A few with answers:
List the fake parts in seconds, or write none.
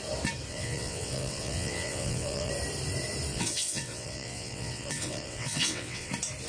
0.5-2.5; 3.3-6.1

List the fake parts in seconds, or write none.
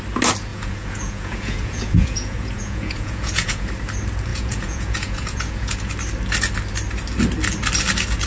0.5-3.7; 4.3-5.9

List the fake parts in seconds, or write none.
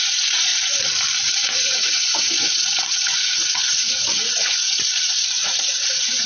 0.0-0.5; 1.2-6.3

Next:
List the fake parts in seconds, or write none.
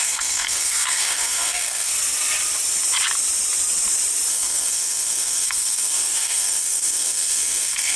0.0-1.9; 4.3-8.0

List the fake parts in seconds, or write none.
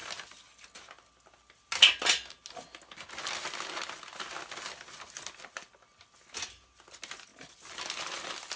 none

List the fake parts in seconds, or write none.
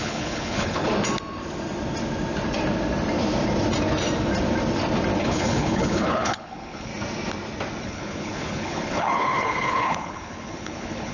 0.0-0.9; 5.2-6.9; 7.8-11.1